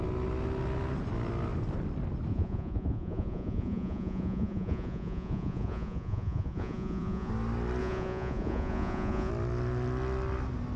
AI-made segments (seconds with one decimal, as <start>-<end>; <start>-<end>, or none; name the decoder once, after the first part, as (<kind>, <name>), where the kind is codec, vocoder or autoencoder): 2.3-7.3 (vocoder, Vocos); 7.8-9.3